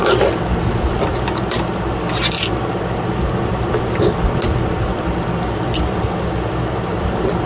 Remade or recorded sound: recorded